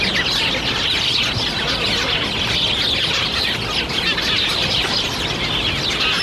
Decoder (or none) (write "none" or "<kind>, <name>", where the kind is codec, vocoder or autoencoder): none